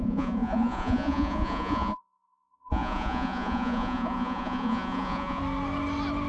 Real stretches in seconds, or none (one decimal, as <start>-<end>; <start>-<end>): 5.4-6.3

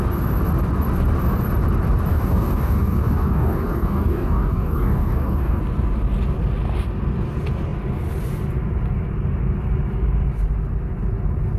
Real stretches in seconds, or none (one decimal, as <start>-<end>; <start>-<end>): 0.0-2.1; 5.6-11.6

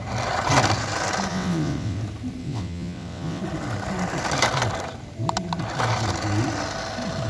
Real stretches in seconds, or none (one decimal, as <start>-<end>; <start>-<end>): 0.0-1.3; 2.0-2.4; 3.4-7.3